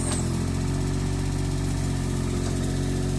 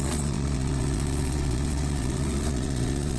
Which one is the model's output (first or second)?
second